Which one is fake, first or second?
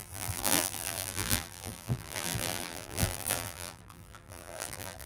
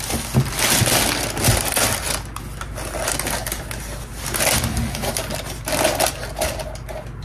first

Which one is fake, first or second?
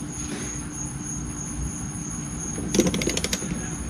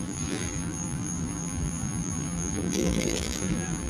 second